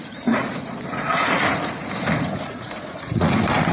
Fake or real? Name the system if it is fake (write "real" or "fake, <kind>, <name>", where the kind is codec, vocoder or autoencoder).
fake, vocoder, Vocos